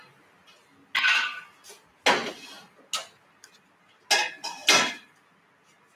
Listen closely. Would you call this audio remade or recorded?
recorded